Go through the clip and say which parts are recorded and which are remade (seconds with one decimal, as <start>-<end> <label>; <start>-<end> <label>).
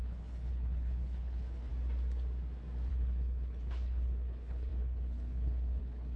0.0-1.7 remade; 1.7-2.9 recorded; 2.9-6.2 remade